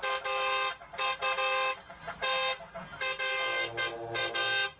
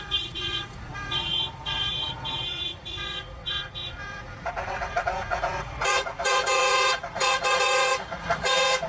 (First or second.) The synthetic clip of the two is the second